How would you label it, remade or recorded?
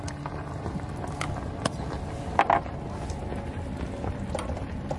recorded